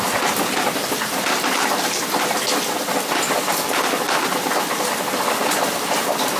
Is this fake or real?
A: real